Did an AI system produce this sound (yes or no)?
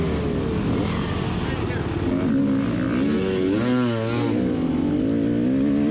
no